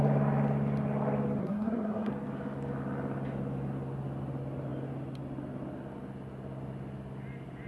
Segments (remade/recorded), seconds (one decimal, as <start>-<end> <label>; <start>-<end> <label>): 0.0-1.4 recorded; 1.4-2.1 remade; 2.1-7.7 recorded